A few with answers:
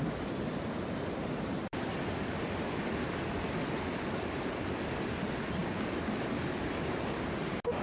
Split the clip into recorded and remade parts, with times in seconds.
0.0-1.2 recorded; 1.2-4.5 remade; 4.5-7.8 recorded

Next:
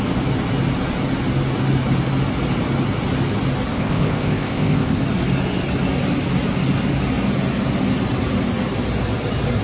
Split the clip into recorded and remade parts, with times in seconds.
0.0-3.7 recorded; 3.7-5.0 remade; 5.0-9.6 recorded

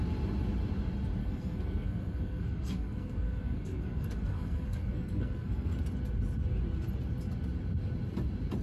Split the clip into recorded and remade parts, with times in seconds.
0.0-1.2 recorded; 1.2-5.8 remade; 5.8-8.6 recorded